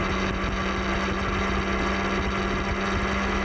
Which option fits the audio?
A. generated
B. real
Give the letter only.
B